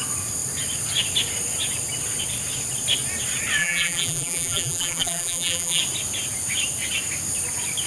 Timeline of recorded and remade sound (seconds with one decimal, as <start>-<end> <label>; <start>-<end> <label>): 0.0-3.6 recorded; 3.6-5.8 remade; 5.8-7.9 recorded